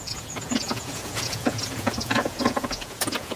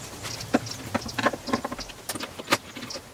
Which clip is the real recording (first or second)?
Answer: second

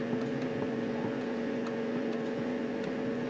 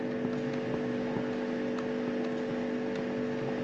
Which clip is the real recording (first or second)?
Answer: second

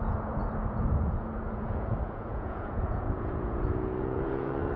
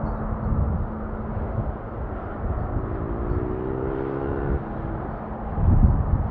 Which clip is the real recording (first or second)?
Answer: second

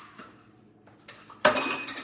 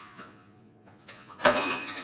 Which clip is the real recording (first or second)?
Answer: first